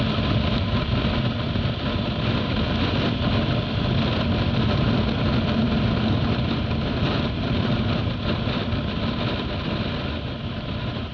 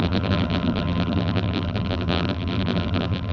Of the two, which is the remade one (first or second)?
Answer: second